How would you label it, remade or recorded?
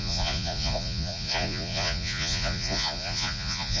remade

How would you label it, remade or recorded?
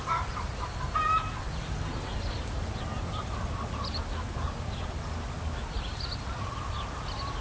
recorded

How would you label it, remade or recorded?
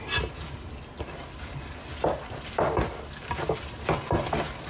recorded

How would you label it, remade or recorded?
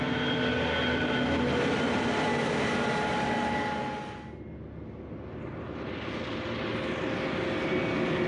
recorded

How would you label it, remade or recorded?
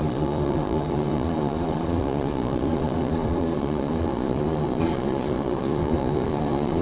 remade